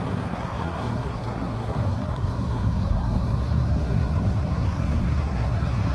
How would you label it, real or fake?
fake